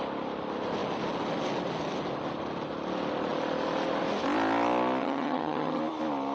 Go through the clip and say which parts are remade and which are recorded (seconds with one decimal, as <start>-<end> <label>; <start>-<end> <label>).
0.0-5.0 recorded; 5.0-5.8 remade; 5.8-6.3 recorded